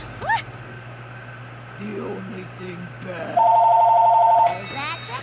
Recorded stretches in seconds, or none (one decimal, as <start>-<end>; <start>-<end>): 0.0-5.2